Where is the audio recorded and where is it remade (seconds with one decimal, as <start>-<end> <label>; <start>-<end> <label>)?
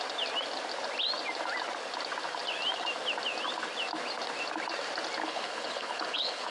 0.0-5.2 recorded; 5.2-6.5 remade